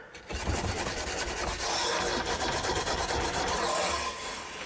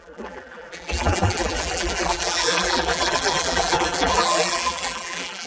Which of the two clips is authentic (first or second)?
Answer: first